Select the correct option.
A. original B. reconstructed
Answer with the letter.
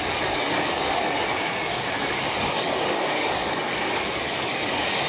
B